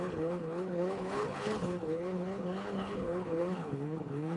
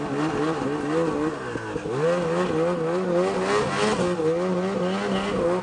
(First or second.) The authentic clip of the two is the second